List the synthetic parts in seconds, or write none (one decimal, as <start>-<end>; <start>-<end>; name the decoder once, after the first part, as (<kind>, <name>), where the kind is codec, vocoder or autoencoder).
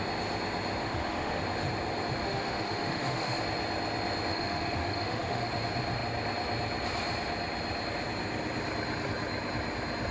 0.8-1.4 (autoencoder, DAC-VAE); 2.2-3.4; 4.3-5.5